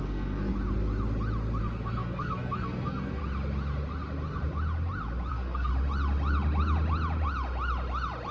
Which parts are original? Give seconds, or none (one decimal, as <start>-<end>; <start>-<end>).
0.5-1.6; 3.2-5.3; 5.7-8.3

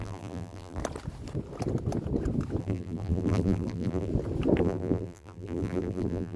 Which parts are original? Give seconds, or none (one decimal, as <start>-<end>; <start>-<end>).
0.8-2.6; 4.1-4.6